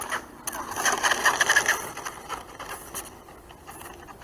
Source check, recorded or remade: recorded